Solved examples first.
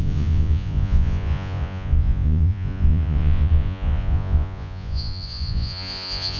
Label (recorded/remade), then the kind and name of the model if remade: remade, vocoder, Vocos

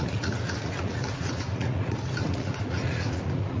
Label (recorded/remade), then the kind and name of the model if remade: remade, vocoder, Vocos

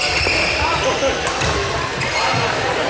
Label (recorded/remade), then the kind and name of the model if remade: recorded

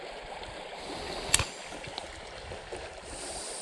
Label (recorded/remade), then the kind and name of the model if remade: recorded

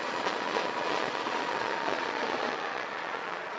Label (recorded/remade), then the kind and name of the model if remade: remade, vocoder, Vocos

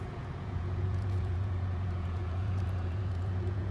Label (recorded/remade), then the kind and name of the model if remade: remade, vocoder, Vocos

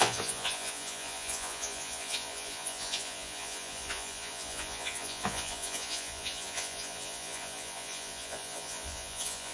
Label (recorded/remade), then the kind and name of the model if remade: remade, vocoder, Vocos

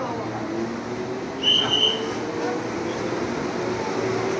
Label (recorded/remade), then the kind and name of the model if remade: recorded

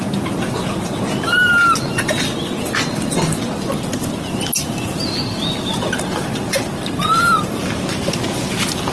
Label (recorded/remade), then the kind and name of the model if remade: recorded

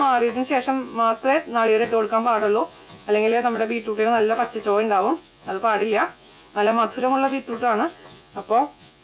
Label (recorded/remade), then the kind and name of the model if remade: remade, vocoder, Vocos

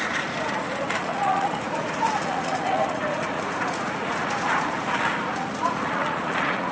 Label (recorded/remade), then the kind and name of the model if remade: remade, vocoder, Vocos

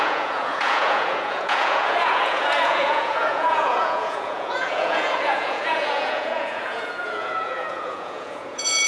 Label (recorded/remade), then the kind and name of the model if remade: remade, vocoder, Vocos